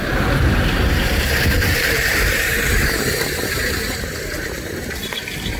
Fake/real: fake